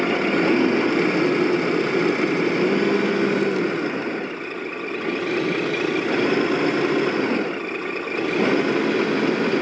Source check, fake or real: real